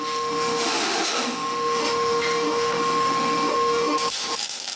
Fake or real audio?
fake